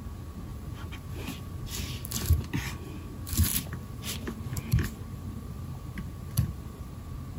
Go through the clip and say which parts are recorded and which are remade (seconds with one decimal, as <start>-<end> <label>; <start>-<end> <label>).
0.0-0.5 recorded; 0.5-1.5 remade; 1.5-3.5 recorded; 3.5-6.9 remade; 6.9-7.4 recorded